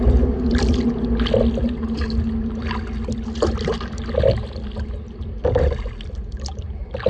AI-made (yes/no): no